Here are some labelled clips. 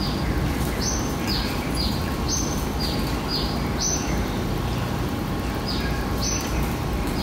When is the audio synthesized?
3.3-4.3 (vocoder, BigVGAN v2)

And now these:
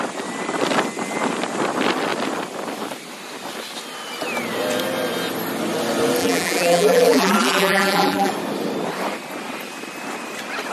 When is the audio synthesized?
6.2-8.3 (vocoder, BigVGAN v2)

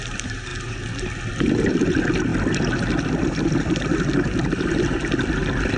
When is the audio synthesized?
none

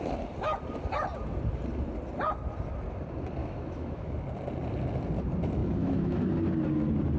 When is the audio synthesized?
3.4-4.1 (autoencoder, DAC-VAE); 5.6-6.2